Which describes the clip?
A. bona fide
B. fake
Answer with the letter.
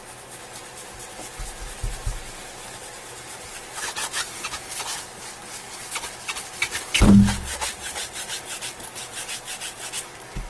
A